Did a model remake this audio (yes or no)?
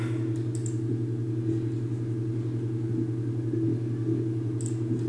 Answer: no